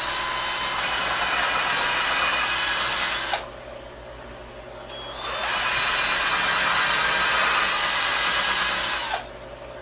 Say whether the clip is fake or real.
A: real